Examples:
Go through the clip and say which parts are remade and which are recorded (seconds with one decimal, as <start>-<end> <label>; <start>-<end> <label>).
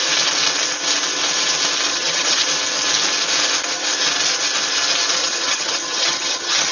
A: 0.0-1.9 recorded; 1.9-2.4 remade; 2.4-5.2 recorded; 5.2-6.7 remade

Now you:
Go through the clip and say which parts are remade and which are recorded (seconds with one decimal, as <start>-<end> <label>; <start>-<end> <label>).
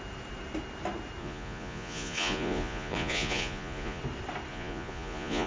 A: 0.0-1.2 recorded; 1.2-4.0 remade; 4.0-4.5 recorded; 4.5-5.5 remade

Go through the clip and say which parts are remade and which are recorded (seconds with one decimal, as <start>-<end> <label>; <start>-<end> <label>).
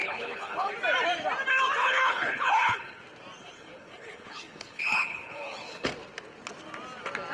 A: 0.0-0.7 remade; 0.7-1.8 recorded; 1.8-3.0 remade; 3.0-3.4 recorded; 3.4-5.9 remade; 5.9-7.3 recorded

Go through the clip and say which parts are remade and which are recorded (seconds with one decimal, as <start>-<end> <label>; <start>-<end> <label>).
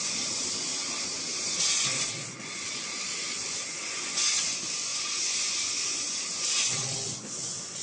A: 0.0-7.8 remade